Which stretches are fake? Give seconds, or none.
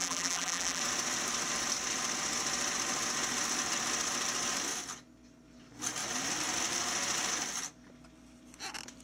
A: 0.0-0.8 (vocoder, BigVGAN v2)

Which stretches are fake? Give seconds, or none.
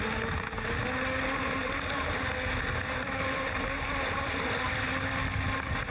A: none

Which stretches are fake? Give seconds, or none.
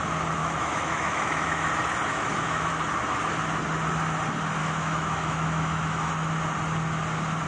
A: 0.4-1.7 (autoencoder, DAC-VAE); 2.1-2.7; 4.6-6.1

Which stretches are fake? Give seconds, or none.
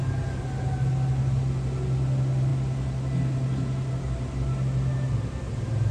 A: none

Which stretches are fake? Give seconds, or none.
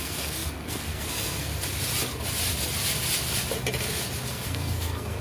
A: 0.0-1.5 (codec, SNAC); 4.3-5.2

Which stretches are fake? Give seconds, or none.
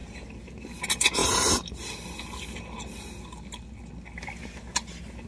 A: 0.0-0.6 (vocoder, BigVGAN v2)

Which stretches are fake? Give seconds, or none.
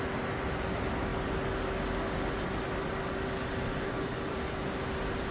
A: none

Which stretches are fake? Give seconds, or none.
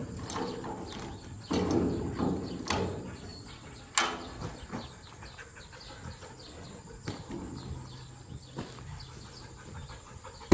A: none